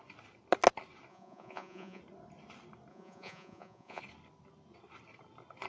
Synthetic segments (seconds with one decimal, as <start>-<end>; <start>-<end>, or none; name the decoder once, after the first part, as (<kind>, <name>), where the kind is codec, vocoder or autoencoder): 1.1-2.0 (vocoder, Vocos); 2.9-4.0